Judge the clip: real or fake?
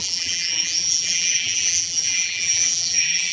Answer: fake